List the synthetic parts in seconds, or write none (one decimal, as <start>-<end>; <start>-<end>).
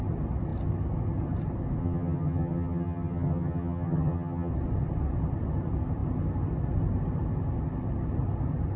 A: 1.8-4.5